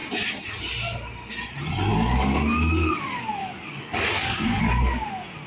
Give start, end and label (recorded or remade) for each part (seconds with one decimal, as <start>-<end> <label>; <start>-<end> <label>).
0.0-1.9 recorded; 1.9-3.0 remade; 3.0-3.4 recorded; 3.4-4.6 remade; 4.6-5.5 recorded